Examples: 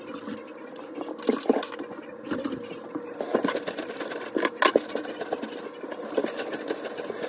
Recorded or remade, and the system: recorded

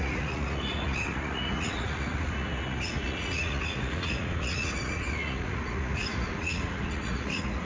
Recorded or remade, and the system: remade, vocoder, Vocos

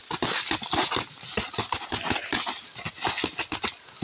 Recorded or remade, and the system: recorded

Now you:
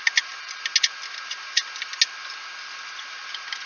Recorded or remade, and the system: recorded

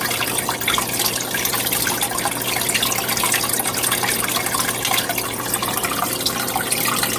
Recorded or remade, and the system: recorded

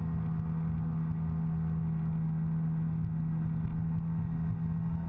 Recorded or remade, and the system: recorded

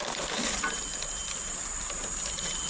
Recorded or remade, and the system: remade, vocoder, BigVGAN v2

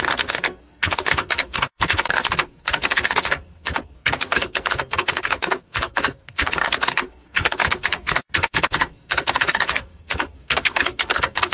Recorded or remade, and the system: remade, codec, SNAC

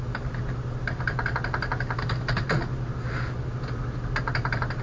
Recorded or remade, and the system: recorded